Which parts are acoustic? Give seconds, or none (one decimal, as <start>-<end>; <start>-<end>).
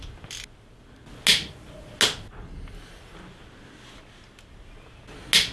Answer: 0.0-5.5